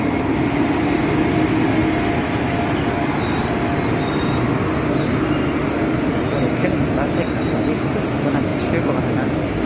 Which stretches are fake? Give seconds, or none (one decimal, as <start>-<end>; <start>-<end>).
none